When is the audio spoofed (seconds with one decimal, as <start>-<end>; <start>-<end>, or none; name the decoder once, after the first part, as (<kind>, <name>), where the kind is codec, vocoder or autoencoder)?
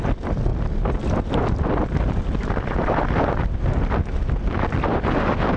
none